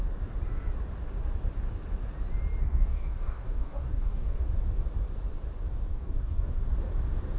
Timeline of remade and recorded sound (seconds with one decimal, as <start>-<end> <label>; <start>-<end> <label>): 0.0-2.6 recorded; 2.6-4.5 remade; 4.5-5.9 recorded; 5.9-6.6 remade; 6.6-7.4 recorded